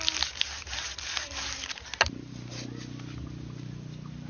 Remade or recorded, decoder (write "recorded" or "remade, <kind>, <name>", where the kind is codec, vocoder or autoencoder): recorded